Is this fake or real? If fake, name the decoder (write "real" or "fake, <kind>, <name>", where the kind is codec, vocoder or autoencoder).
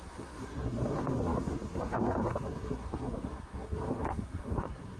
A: fake, codec, SNAC